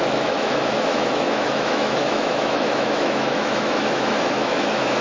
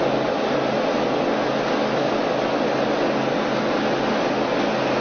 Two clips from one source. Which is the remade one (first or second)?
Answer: first